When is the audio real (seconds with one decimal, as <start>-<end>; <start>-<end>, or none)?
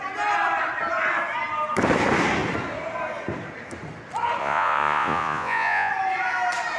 0.0-4.4; 5.9-6.8